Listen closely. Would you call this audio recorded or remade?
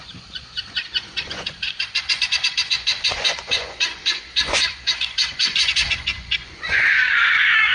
remade